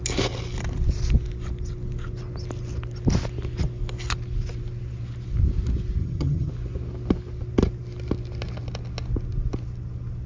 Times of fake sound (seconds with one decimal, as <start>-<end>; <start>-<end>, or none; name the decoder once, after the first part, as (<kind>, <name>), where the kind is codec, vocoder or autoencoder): 6.0-6.5 (vocoder, HiFi-GAN)